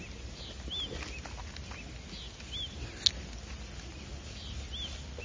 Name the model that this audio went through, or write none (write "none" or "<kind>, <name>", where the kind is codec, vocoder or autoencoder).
none